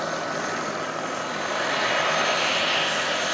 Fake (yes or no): no